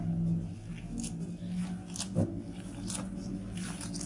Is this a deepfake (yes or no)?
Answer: no